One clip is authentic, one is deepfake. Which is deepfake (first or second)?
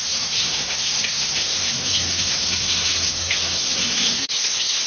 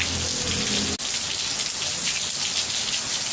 first